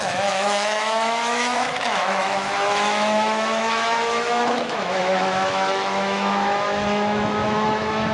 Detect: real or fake fake